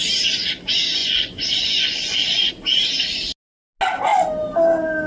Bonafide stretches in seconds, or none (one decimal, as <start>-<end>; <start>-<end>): 0.0-1.0; 2.5-5.1